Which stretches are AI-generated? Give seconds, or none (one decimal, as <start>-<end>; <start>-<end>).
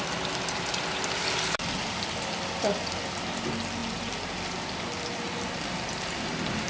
0.0-6.7